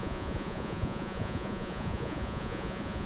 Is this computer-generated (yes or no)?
yes